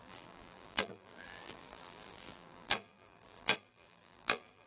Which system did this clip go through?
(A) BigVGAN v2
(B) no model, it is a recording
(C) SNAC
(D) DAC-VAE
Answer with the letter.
A